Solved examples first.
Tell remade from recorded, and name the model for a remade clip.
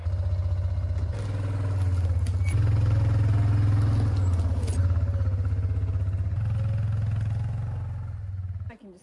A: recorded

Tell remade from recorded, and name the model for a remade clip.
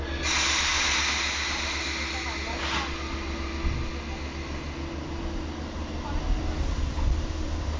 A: recorded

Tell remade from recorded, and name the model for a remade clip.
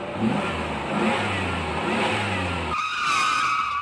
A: recorded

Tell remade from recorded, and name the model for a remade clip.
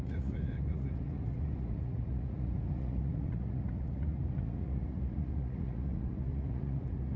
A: remade, vocoder, Vocos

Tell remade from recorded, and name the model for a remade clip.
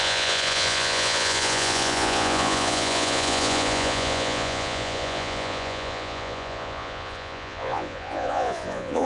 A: remade, vocoder, Vocos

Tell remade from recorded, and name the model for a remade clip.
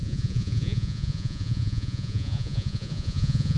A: remade, vocoder, Vocos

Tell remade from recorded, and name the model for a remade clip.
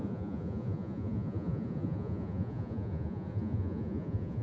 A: remade, vocoder, Vocos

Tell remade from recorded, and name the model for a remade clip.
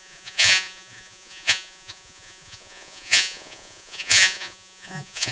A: remade, vocoder, Vocos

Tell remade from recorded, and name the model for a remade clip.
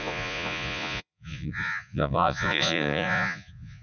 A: remade, vocoder, Vocos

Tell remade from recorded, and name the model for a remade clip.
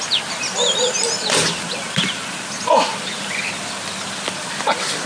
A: recorded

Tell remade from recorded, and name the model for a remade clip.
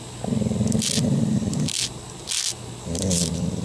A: recorded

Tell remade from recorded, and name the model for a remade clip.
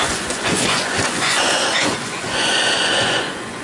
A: remade, vocoder, Vocos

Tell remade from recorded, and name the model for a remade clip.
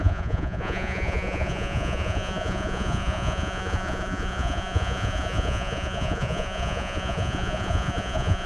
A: remade, vocoder, Vocos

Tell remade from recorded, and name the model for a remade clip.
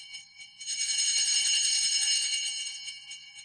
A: remade, vocoder, Vocos